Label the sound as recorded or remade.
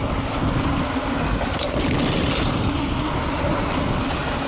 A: recorded